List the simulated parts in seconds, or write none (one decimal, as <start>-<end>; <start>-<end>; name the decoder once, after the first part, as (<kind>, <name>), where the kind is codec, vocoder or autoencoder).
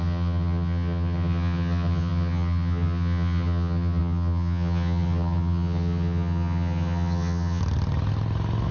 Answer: 0.0-7.6 (vocoder, HiFi-GAN)